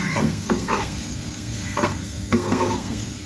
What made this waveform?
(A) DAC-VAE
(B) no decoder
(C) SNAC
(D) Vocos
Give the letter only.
C